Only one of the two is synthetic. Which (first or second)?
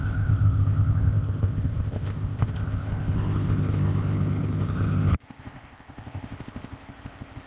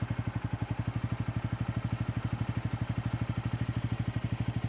first